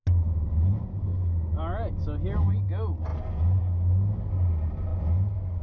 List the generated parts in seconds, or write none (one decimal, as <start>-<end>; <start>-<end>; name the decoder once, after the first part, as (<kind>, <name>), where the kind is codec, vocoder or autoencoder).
none